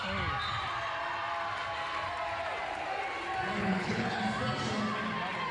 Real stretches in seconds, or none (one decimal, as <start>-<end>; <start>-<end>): 0.0-3.6; 4.2-5.5